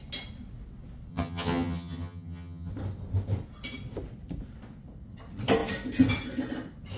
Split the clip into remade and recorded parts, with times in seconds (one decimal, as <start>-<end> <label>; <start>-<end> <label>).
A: 0.0-1.1 recorded; 1.1-2.7 remade; 2.7-7.0 recorded